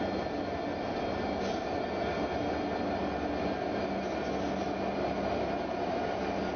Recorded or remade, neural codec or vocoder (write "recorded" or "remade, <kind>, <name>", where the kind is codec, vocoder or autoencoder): recorded